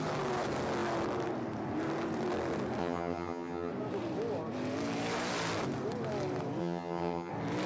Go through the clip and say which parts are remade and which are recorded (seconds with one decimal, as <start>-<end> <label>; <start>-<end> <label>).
0.0-2.8 recorded; 2.8-3.7 remade; 3.7-6.6 recorded; 6.6-7.3 remade; 7.3-7.7 recorded